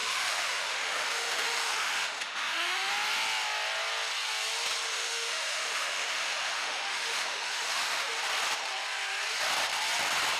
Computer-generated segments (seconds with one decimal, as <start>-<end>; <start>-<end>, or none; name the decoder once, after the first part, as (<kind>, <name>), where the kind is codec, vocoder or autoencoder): 0.0-2.9 (autoencoder, DAC-VAE); 4.9-8.1